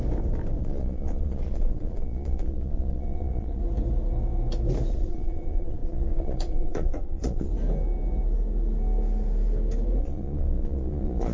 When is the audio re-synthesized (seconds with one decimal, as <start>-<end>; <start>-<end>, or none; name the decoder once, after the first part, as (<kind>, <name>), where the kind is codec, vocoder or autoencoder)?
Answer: 0.6-3.6 (vocoder, Vocos); 4.9-7.5; 10.0-11.3